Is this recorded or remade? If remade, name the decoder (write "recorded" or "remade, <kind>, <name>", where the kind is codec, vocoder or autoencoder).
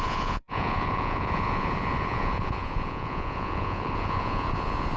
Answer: remade, vocoder, Vocos